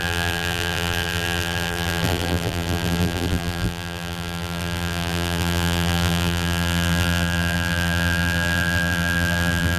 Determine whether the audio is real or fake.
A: fake